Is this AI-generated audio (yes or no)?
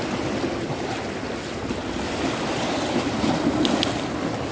no